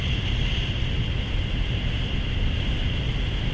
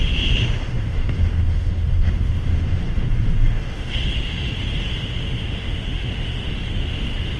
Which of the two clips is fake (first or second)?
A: second